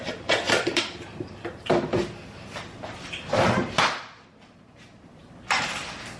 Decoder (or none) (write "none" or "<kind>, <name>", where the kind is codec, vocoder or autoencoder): none